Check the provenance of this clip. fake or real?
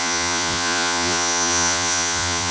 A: fake